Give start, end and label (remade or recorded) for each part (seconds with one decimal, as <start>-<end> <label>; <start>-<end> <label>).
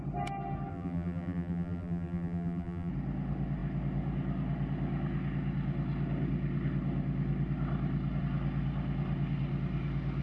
0.0-0.7 recorded; 0.7-2.9 remade; 2.9-10.2 recorded